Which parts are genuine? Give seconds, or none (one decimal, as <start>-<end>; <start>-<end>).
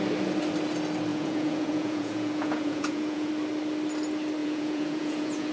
0.0-1.1; 3.3-4.4